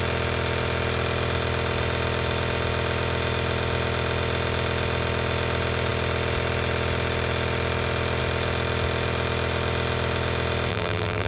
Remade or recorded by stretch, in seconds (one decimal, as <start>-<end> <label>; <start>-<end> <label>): 0.0-10.7 recorded; 10.7-11.3 remade